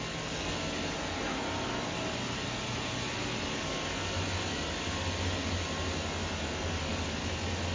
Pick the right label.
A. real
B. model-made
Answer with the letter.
A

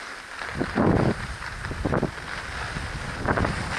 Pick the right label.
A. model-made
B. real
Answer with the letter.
B